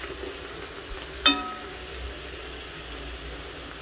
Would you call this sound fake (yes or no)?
no